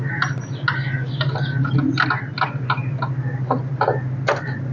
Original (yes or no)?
yes